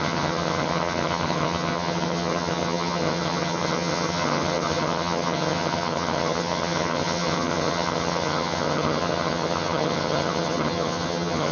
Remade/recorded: remade